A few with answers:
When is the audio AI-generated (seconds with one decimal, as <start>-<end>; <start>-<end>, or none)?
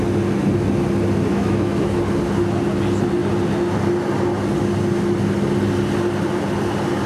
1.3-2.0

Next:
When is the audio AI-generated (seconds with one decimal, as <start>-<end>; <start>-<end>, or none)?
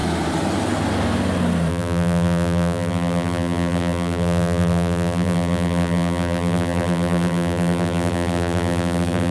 1.7-9.3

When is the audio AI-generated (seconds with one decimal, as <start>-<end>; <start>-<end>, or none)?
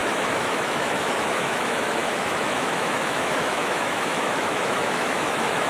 0.0-5.7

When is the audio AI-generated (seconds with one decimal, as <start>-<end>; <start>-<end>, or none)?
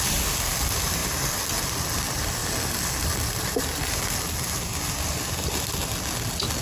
none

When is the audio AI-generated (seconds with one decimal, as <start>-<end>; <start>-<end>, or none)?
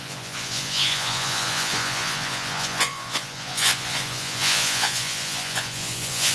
0.0-6.3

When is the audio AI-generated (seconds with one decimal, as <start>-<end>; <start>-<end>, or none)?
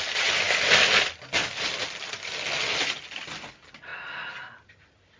none